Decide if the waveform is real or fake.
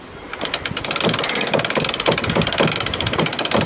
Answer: real